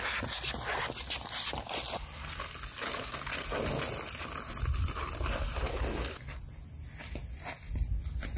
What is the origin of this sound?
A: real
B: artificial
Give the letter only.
A